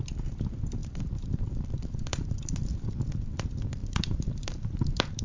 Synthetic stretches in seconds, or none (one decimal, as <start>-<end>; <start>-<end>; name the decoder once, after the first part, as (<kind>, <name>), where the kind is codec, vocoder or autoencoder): 0.8-2.9 (vocoder, BigVGAN v2); 3.8-5.2